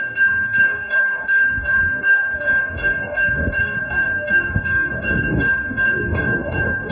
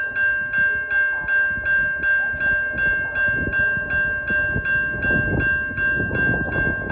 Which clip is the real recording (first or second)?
second